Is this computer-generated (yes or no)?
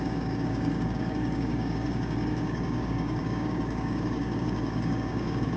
yes